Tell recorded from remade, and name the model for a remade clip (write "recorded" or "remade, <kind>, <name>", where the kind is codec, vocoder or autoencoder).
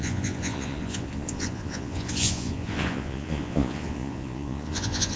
remade, vocoder, Vocos